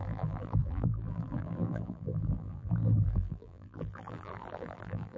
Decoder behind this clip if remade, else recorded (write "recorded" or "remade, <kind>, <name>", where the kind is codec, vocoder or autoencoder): remade, vocoder, BigVGAN v2